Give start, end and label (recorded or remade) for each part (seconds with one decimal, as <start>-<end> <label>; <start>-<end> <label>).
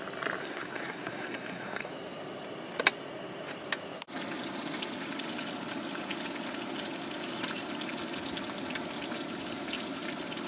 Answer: 0.0-0.4 recorded; 0.4-1.9 remade; 1.9-10.5 recorded